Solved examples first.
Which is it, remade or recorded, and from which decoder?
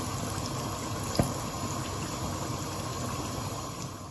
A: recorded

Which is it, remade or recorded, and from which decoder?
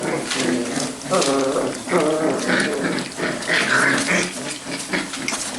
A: recorded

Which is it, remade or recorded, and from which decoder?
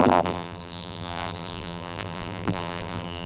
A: remade, vocoder, BigVGAN v2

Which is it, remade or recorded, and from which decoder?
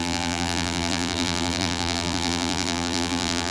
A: remade, vocoder, BigVGAN v2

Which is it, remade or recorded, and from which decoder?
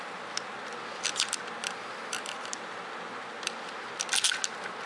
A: recorded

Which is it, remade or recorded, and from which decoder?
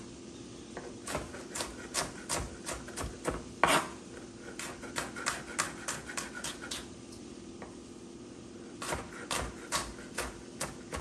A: recorded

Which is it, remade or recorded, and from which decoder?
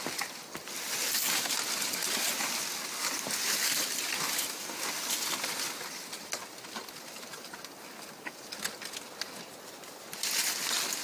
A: recorded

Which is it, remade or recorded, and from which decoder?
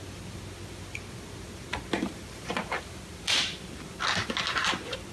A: recorded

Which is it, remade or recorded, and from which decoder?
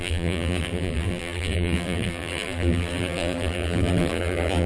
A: remade, vocoder, BigVGAN v2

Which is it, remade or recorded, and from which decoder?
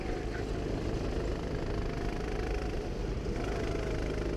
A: recorded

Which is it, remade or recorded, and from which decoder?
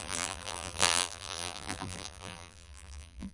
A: remade, vocoder, BigVGAN v2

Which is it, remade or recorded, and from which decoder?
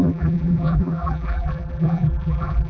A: remade, vocoder, BigVGAN v2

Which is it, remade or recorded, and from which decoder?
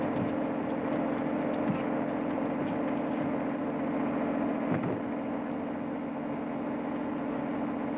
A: recorded